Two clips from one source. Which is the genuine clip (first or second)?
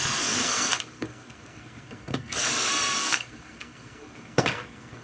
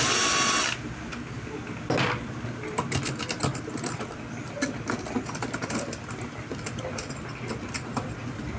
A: second